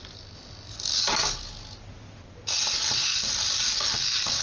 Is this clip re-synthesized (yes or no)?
no